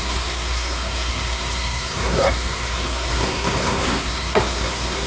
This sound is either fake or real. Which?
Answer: fake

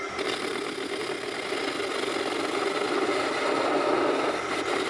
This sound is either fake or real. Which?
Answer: real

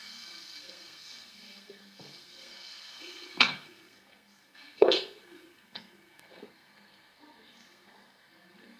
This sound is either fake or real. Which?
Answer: fake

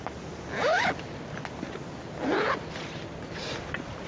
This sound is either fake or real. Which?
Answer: real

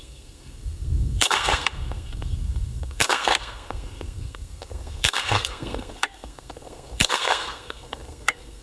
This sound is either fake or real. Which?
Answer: fake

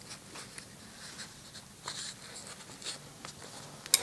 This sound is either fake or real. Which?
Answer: real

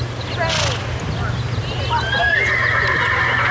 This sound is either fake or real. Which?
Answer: real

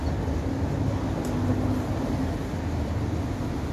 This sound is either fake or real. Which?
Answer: real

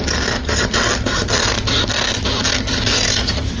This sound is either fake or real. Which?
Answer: real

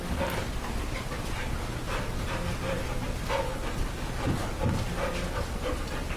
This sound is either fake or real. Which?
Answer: real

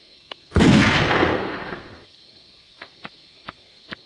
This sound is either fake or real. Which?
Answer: fake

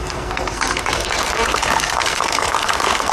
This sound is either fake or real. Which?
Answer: fake